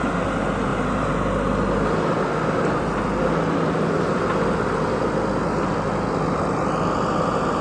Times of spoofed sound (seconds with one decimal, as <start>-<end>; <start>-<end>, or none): none